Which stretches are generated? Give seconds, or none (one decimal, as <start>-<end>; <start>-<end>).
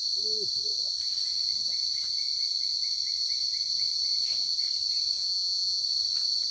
5.2-5.8